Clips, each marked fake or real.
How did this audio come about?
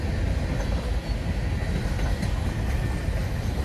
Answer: real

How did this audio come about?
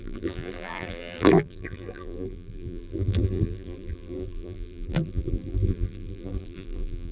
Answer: fake